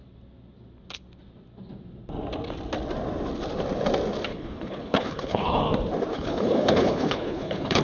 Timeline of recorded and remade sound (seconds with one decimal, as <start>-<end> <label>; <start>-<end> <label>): 0.0-4.3 recorded; 4.3-5.6 remade; 5.6-6.1 recorded; 6.1-7.8 remade